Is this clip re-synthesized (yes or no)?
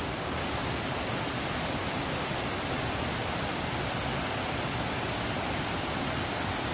yes